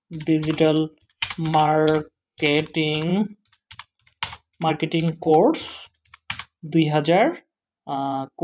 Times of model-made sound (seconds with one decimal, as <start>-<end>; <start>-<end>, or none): 0.0-3.1; 4.7-5.3; 7.6-8.4